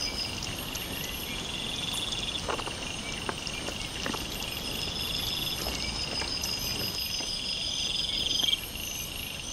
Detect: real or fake real